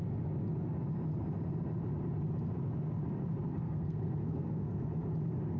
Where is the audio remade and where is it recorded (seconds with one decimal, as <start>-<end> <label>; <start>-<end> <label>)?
0.0-3.5 recorded; 3.5-4.9 remade; 4.9-5.6 recorded